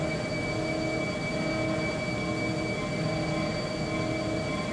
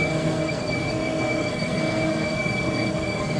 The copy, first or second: second